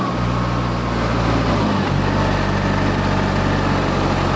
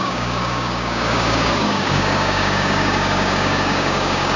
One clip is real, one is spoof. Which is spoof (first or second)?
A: second